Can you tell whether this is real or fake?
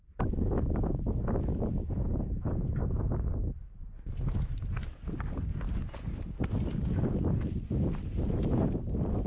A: real